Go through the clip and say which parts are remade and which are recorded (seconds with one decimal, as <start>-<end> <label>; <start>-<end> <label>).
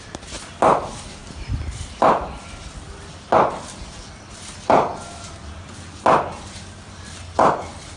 0.0-8.0 recorded